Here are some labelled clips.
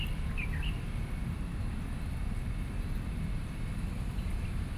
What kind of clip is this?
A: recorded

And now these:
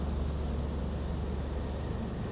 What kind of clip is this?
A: recorded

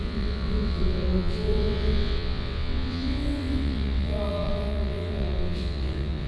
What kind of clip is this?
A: remade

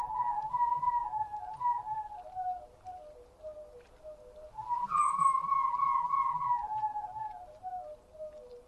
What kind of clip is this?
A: recorded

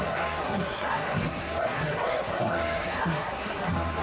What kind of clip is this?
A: remade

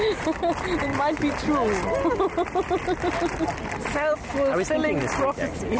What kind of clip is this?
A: recorded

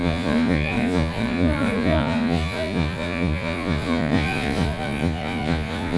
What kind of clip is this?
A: remade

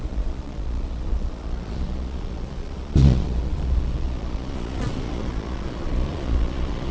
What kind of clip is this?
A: remade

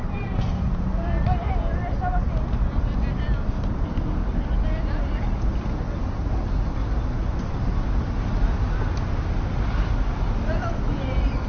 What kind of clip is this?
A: recorded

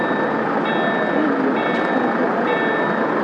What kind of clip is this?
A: recorded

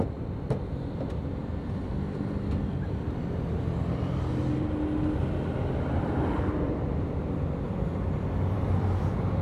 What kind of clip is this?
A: remade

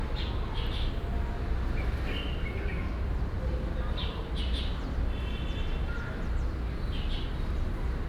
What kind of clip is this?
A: recorded